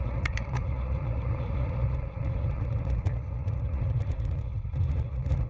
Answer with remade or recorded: remade